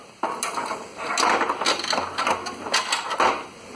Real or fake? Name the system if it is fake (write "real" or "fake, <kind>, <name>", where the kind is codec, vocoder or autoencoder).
real